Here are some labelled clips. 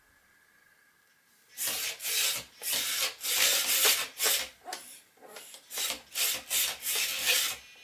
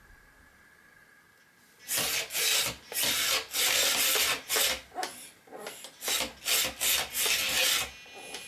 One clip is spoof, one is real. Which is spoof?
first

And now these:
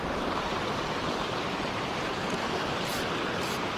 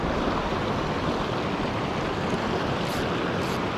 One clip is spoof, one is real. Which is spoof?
first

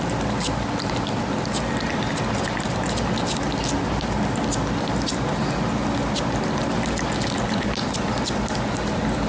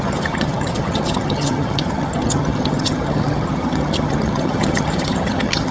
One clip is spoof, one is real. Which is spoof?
second